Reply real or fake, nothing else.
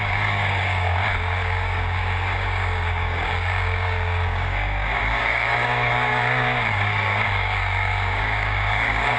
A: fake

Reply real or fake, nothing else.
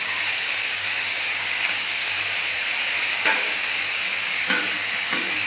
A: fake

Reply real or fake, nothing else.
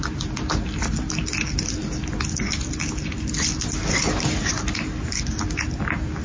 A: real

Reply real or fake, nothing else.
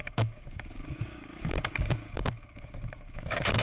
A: fake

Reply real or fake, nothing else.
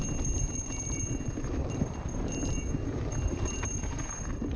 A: real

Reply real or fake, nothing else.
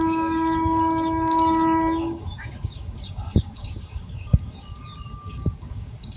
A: fake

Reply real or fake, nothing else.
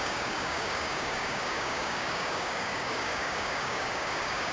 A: fake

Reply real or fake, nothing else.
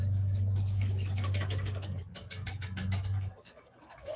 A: fake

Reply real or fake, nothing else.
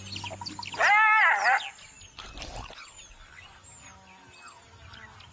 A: real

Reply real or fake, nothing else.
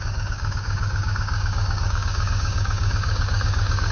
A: fake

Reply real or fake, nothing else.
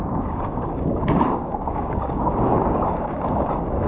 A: fake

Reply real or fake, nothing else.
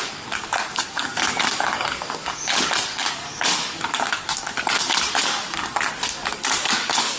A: fake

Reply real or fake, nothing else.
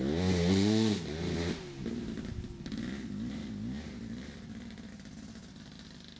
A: real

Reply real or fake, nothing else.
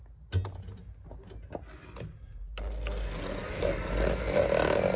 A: real